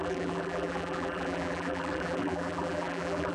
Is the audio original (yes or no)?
no